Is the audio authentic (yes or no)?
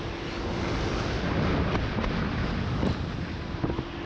yes